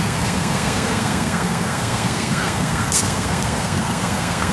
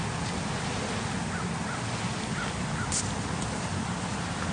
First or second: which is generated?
first